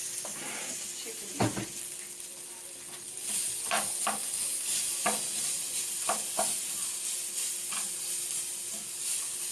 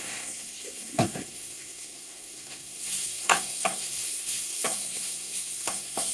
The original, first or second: first